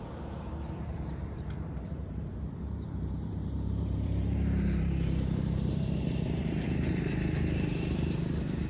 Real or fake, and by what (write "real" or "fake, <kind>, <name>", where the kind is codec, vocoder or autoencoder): fake, vocoder, BigVGAN v2